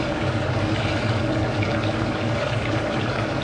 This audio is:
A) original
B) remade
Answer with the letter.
B